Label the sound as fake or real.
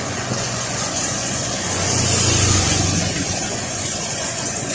fake